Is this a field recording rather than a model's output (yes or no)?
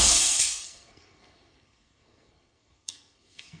no